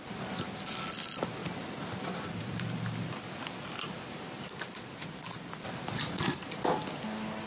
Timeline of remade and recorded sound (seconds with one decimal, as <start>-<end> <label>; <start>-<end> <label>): 0.0-1.4 recorded; 1.4-3.9 remade; 3.9-7.5 recorded